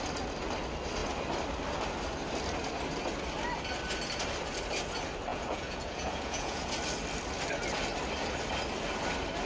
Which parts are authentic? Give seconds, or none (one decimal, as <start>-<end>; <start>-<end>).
0.0-5.3; 6.7-9.5